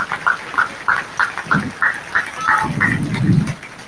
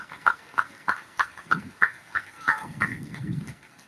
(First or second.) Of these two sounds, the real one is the first